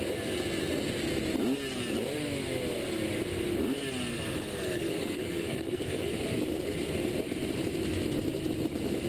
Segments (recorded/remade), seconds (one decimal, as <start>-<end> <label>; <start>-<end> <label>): 0.0-4.1 recorded; 4.1-6.1 remade; 6.1-9.1 recorded